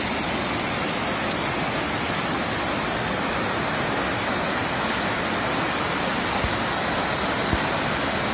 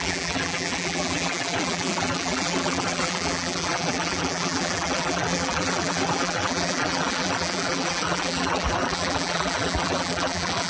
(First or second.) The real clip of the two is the first